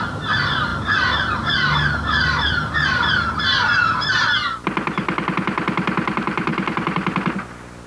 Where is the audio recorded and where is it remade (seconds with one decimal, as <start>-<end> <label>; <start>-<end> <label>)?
0.0-0.7 recorded; 0.7-3.4 remade; 3.4-6.5 recorded; 6.5-7.3 remade; 7.3-7.9 recorded